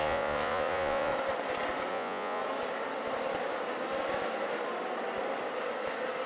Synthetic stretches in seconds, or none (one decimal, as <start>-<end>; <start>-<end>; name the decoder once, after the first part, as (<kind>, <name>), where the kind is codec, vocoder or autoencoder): 0.0-1.1 (vocoder, Vocos); 1.9-2.4